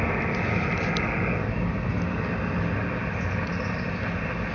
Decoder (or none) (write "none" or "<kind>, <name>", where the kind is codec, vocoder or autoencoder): vocoder, BigVGAN v2